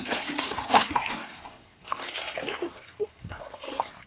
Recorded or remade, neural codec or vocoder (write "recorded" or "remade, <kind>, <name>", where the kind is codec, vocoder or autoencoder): remade, codec, SNAC